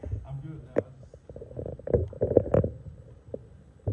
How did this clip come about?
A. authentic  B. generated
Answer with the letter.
A